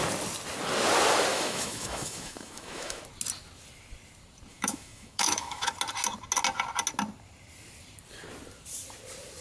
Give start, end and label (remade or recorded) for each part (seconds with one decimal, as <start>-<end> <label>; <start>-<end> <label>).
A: 0.0-1.3 recorded; 1.3-3.0 remade; 3.0-4.5 recorded; 4.5-5.7 remade; 5.7-9.4 recorded